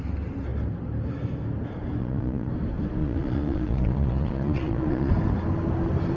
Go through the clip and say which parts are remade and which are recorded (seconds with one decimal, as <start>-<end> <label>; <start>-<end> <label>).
0.0-2.0 recorded; 2.0-2.5 remade; 2.5-3.0 recorded; 3.0-5.1 remade; 5.1-6.2 recorded